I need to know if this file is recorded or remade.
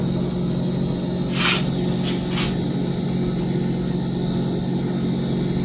recorded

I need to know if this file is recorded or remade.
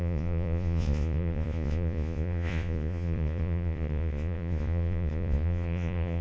remade